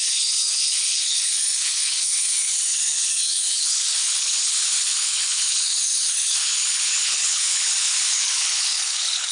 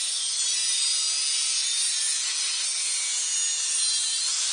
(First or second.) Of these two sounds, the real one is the second